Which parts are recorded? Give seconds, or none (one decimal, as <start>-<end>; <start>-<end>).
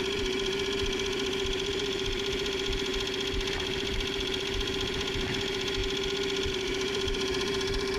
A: 2.9-3.5; 5.8-6.5